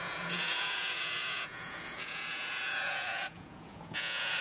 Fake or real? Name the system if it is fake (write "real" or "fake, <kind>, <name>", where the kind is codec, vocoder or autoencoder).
fake, vocoder, Vocos